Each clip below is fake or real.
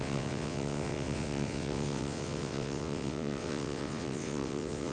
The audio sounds fake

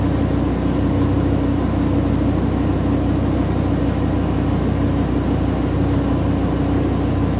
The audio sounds real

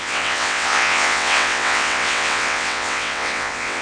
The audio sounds fake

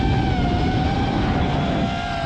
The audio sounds real